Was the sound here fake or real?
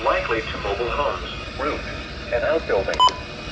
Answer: real